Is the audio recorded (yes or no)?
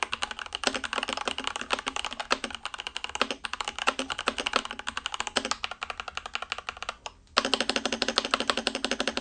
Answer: yes